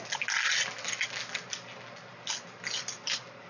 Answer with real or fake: real